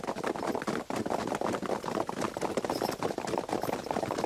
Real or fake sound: real